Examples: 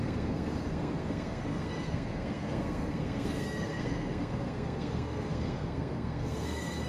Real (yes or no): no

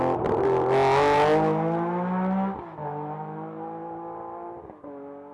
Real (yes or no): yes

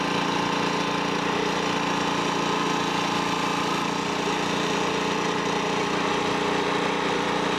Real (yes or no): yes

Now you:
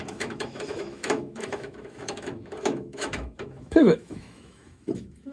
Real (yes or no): no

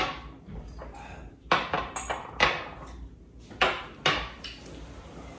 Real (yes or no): yes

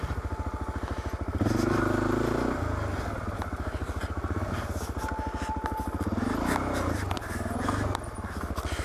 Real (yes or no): yes